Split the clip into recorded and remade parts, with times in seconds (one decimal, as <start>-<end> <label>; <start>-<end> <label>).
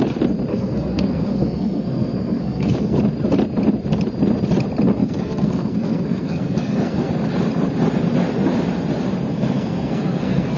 0.0-0.5 recorded; 0.5-3.0 remade; 3.0-5.0 recorded; 5.0-7.1 remade; 7.1-9.3 recorded; 9.3-10.6 remade